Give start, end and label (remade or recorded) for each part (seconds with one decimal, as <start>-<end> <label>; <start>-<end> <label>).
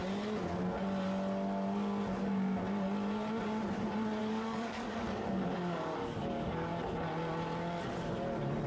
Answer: 0.0-4.2 recorded; 4.2-6.7 remade; 6.7-8.7 recorded